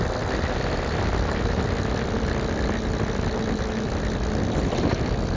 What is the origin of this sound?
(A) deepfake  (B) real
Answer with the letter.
B